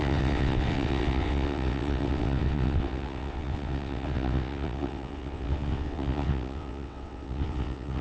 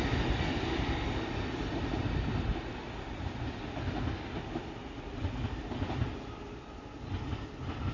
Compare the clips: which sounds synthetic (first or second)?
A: first